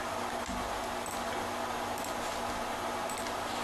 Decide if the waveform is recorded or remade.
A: recorded